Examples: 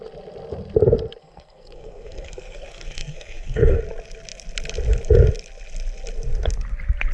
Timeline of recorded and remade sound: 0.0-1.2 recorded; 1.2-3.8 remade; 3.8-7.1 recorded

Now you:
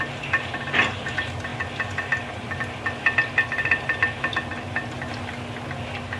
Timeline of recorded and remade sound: 0.0-6.2 recorded

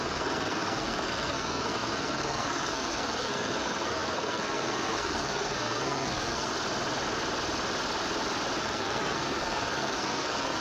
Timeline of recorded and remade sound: 0.0-6.5 remade; 6.5-8.6 recorded; 8.6-10.6 remade

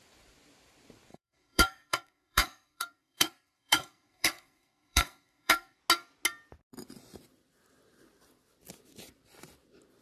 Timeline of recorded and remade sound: 0.0-1.1 recorded; 1.1-5.8 remade; 5.8-10.0 recorded

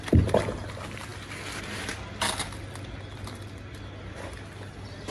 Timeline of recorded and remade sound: 0.0-5.1 recorded

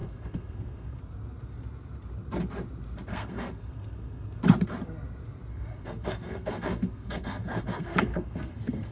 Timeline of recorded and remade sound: 0.0-1.0 remade; 1.0-3.1 recorded; 3.1-4.4 remade; 4.4-5.5 recorded; 5.5-8.9 remade

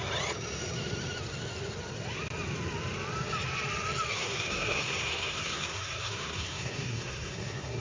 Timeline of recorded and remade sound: 0.0-4.1 recorded; 4.1-7.8 remade